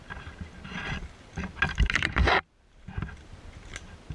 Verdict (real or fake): real